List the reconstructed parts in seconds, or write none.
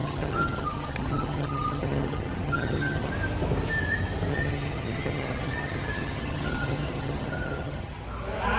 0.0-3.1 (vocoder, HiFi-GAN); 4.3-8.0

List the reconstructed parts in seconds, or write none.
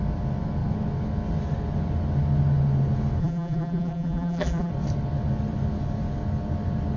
3.2-4.7 (vocoder, BigVGAN v2)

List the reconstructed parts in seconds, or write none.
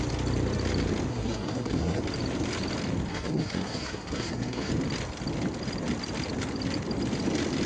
1.1-2.0 (codec, SNAC); 3.1-4.7